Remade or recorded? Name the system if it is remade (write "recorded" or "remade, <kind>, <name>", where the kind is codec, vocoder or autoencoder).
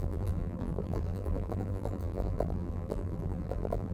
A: remade, vocoder, BigVGAN v2